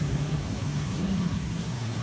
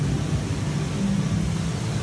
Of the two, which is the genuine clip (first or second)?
second